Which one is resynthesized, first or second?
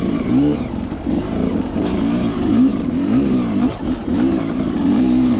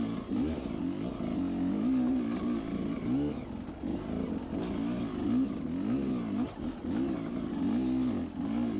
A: first